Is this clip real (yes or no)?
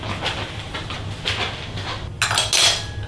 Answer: yes